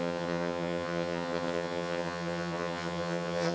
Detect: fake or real fake